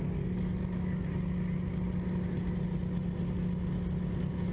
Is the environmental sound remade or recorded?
recorded